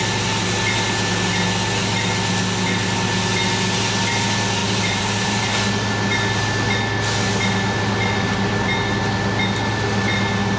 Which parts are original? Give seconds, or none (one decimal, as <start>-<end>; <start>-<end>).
0.0-4.6; 5.4-10.6